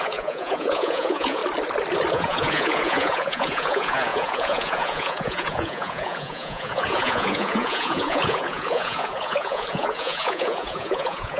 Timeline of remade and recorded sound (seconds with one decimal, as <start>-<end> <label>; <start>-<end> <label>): 0.0-1.4 remade; 1.4-2.1 recorded; 2.1-11.4 remade